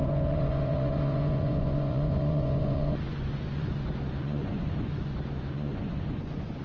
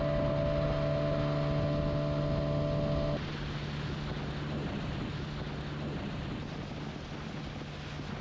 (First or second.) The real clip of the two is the second